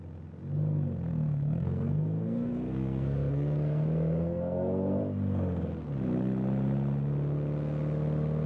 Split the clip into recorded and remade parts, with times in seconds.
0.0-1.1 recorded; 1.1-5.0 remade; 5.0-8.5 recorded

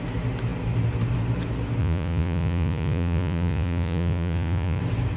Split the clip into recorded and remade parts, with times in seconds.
0.0-1.8 recorded; 1.8-4.8 remade; 4.8-5.2 recorded

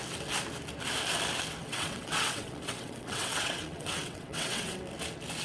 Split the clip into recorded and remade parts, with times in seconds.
0.0-1.6 recorded; 1.6-4.8 remade; 4.8-5.4 recorded